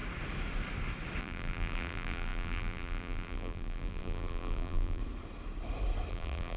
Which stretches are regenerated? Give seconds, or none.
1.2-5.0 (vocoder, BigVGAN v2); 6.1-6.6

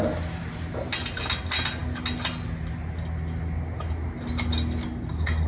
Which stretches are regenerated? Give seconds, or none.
none

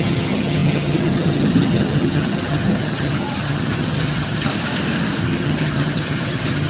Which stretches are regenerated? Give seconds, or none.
0.0-4.5 (vocoder, HiFi-GAN); 5.2-6.7

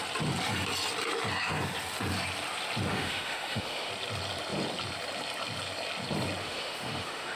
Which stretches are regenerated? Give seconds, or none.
2.9-3.9 (autoencoder, DAC-VAE); 6.4-7.4

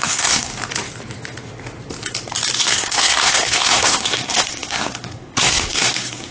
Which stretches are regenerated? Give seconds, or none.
0.0-0.5 (codec, SNAC); 2.6-6.3

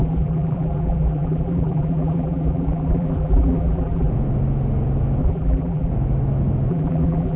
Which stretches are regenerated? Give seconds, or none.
0.0-4.1 (vocoder, BigVGAN v2); 5.2-5.9; 6.7-7.4

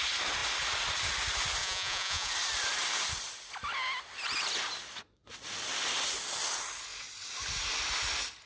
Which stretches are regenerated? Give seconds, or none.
1.6-2.3 (vocoder, Vocos)